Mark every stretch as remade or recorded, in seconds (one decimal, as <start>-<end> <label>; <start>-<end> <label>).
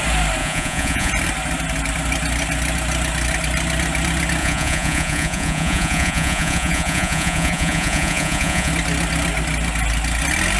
0.0-0.4 recorded; 0.4-1.1 remade; 1.1-4.4 recorded; 4.4-8.7 remade; 8.7-10.6 recorded